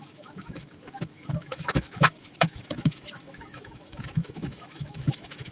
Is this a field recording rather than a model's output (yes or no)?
no